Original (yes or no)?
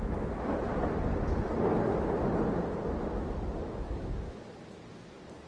yes